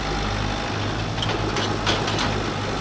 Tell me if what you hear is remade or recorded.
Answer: recorded